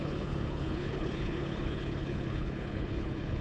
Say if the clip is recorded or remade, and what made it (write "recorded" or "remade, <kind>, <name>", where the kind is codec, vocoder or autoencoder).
remade, codec, HILCodec